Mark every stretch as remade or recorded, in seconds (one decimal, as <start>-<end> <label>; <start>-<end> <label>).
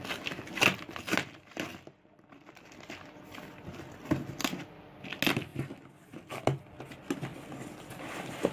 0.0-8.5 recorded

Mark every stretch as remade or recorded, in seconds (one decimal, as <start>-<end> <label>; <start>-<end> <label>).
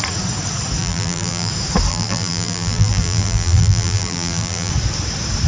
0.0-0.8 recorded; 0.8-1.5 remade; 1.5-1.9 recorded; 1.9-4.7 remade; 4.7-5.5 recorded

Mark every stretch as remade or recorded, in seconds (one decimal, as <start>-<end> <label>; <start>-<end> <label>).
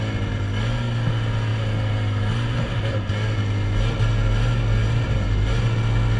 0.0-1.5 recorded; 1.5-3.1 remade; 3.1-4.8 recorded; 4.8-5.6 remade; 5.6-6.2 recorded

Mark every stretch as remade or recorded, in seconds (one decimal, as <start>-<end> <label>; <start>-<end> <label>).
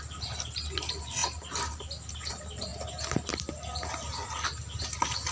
0.0-2.7 remade; 2.7-4.8 recorded; 4.8-5.3 remade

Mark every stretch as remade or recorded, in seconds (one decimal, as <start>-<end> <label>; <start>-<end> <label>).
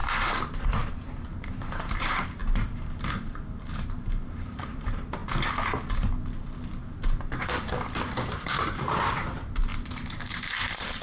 0.0-5.2 remade; 5.2-8.2 recorded; 8.2-9.7 remade; 9.7-10.3 recorded; 10.3-11.0 remade